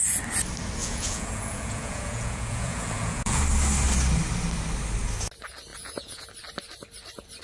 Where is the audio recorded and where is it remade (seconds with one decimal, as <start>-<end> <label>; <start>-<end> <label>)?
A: 0.0-0.8 recorded; 0.8-3.4 remade; 3.4-5.7 recorded; 5.7-6.3 remade; 6.3-7.4 recorded